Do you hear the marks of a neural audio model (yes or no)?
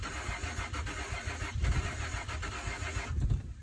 no